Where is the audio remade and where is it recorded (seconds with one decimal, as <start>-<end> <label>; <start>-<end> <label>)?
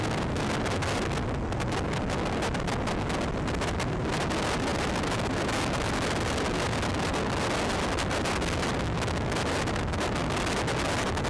0.0-11.3 recorded